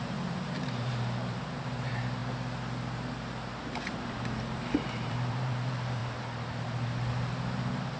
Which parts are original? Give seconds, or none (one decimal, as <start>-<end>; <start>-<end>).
2.2-3.6; 6.0-8.0